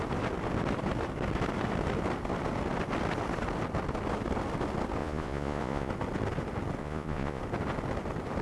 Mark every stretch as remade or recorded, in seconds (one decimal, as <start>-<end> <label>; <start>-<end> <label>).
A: 0.0-5.0 recorded; 5.0-5.9 remade; 5.9-6.8 recorded; 6.8-7.4 remade; 7.4-8.4 recorded